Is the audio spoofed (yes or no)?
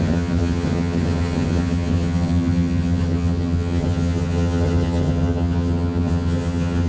yes